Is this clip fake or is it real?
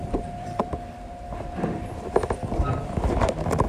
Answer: fake